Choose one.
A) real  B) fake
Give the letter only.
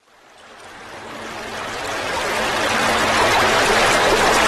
A